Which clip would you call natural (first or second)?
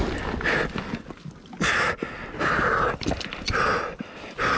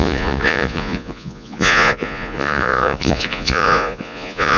first